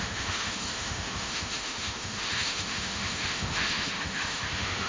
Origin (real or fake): fake